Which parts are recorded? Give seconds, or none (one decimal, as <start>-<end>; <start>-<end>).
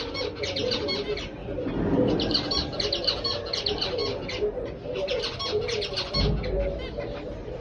0.0-7.6